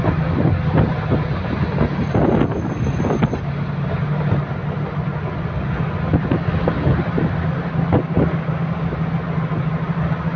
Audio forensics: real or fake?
real